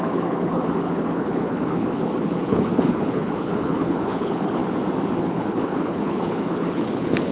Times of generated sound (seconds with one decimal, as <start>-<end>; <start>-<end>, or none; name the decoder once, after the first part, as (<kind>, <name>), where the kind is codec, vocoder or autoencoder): 0.0-4.6 (codec, HILCodec); 5.2-7.3